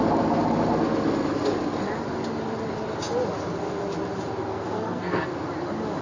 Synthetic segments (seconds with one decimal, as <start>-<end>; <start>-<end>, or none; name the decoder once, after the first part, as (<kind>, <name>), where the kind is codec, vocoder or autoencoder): 4.5-5.3 (codec, SNAC)